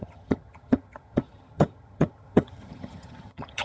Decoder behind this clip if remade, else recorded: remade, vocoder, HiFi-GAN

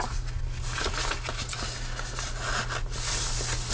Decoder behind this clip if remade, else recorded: recorded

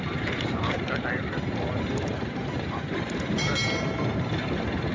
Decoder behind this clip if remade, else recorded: remade, vocoder, BigVGAN v2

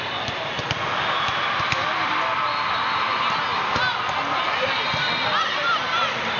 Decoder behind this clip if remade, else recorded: recorded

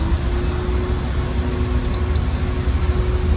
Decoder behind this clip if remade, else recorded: recorded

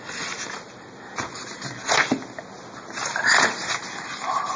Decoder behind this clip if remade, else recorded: recorded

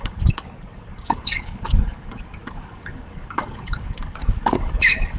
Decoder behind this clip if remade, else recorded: remade, codec, DAC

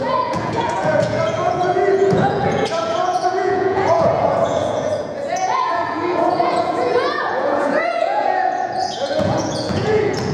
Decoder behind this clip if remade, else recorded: remade, vocoder, Vocos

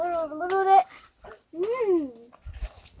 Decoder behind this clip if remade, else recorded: recorded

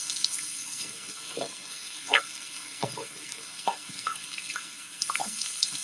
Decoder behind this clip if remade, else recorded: remade, codec, SNAC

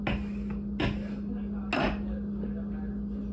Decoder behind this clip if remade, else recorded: recorded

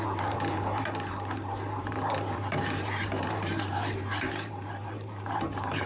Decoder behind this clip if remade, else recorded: remade, vocoder, BigVGAN v2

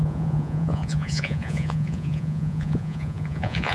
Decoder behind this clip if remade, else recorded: remade, vocoder, Vocos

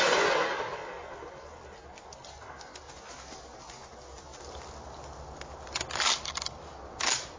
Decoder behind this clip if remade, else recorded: recorded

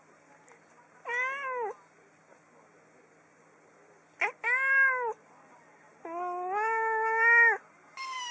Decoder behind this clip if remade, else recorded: recorded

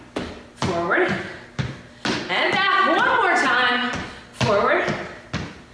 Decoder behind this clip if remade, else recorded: recorded